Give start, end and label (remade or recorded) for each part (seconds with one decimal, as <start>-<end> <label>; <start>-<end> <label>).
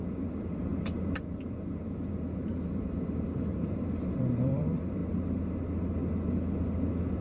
0.0-5.0 remade; 5.0-7.2 recorded